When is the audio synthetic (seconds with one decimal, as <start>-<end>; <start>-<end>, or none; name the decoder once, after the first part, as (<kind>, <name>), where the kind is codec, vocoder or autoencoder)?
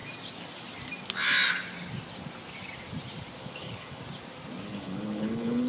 3.4-4.0 (codec, HILCodec); 4.7-5.7